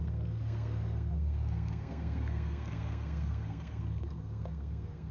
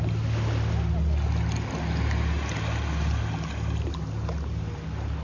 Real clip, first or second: second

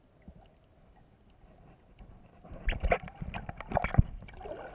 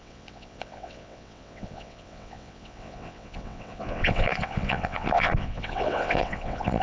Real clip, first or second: first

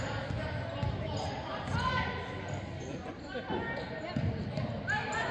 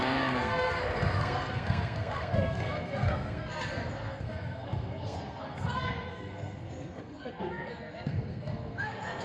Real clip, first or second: first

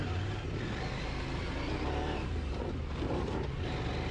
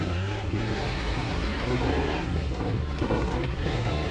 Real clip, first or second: first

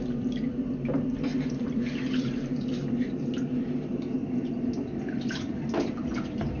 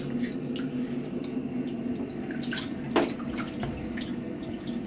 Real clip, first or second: second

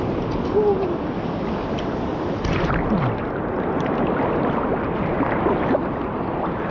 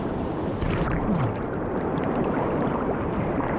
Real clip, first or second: first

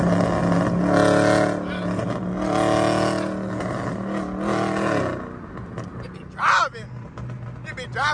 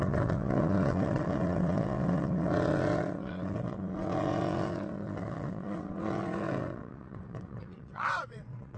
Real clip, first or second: first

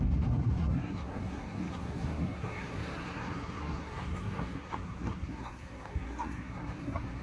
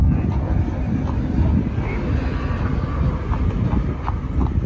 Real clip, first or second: second